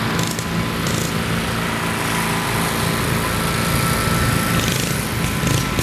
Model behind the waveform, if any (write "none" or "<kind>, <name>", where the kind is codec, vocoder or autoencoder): none